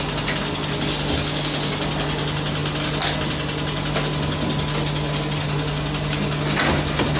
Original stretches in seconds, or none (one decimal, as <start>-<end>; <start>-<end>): 0.0-7.2